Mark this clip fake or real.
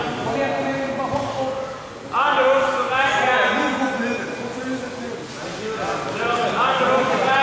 real